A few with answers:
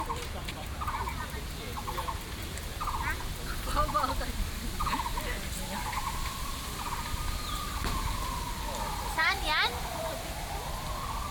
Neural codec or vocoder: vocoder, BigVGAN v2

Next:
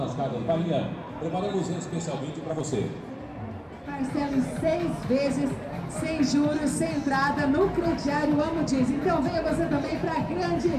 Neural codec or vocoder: none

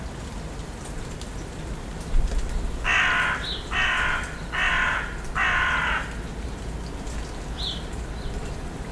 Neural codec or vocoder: none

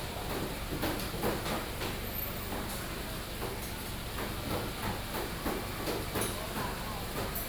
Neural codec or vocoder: vocoder, BigVGAN v2